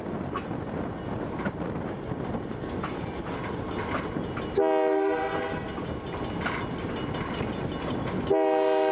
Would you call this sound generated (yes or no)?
no